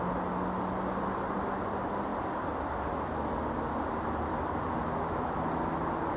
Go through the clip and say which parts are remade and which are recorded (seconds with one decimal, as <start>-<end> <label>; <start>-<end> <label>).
0.0-6.2 recorded